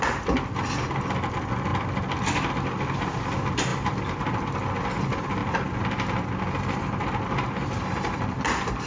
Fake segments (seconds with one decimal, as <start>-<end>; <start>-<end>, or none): 1.7-2.5; 3.7-4.3